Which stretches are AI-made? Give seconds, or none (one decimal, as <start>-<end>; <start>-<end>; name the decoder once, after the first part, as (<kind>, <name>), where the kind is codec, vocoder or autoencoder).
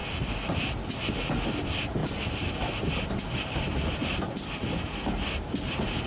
none